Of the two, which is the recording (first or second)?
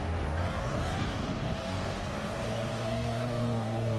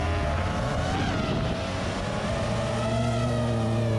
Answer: second